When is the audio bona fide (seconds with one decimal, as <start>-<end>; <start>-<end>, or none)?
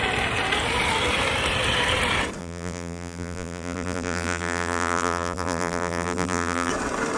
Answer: 0.0-2.4; 6.7-7.2